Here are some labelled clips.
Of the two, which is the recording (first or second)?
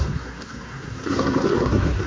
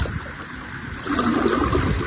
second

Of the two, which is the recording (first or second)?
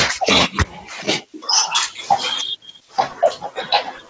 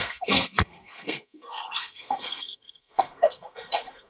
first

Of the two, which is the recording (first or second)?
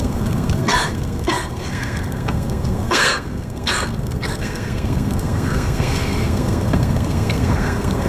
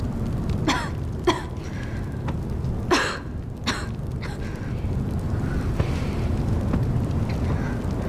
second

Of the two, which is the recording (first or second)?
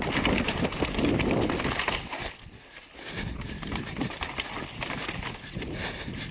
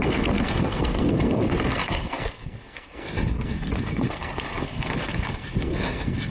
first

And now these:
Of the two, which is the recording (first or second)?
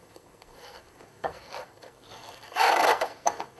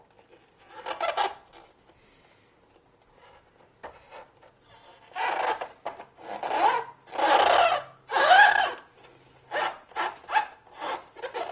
second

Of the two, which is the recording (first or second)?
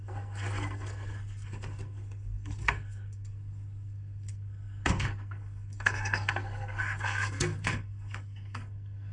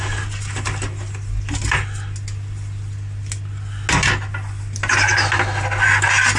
second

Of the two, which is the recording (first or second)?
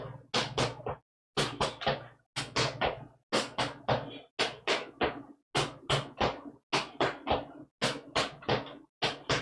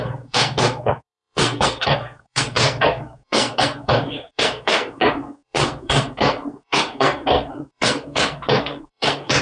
first